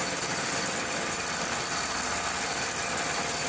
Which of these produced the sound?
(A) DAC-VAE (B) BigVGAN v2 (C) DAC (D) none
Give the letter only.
B